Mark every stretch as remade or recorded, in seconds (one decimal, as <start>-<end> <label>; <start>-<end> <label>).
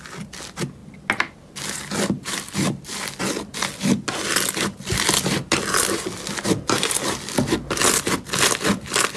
0.0-9.2 recorded